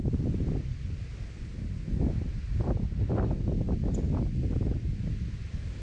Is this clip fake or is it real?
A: real